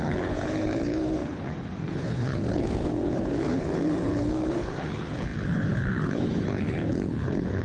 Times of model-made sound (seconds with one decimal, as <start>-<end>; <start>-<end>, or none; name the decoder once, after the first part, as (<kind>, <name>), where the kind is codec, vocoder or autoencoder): 0.0-7.6 (codec, HILCodec)